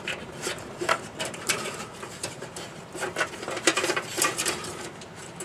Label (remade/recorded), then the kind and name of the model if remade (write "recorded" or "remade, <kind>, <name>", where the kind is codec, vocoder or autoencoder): remade, vocoder, BigVGAN v2